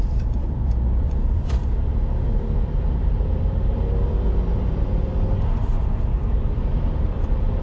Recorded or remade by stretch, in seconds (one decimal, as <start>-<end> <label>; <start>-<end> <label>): 0.0-1.6 remade; 1.6-2.2 recorded; 2.2-5.7 remade; 5.7-7.0 recorded; 7.0-7.6 remade

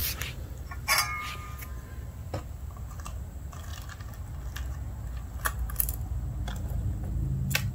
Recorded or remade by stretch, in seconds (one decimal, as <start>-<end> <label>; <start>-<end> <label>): 0.0-1.2 remade; 1.2-7.7 recorded

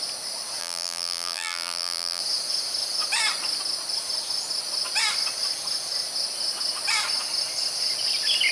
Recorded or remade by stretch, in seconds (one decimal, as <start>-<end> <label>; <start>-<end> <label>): 0.0-0.6 recorded; 0.6-2.2 remade; 2.2-8.5 recorded

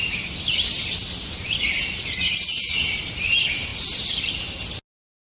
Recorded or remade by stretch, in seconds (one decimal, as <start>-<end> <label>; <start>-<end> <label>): 0.0-0.5 recorded; 0.5-2.0 remade; 2.0-3.7 recorded; 3.7-4.3 remade; 4.3-5.4 recorded

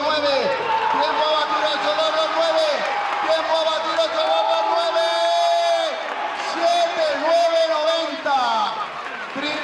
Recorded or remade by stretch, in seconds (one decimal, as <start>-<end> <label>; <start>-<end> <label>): 0.0-1.7 remade; 1.7-2.6 recorded; 2.6-3.5 remade; 3.5-4.4 recorded; 4.4-5.1 remade; 5.1-6.2 recorded; 6.2-9.6 remade

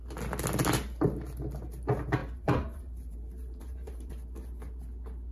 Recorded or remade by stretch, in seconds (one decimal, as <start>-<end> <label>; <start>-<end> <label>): 0.0-2.2 recorded; 2.2-4.1 remade; 4.1-5.3 recorded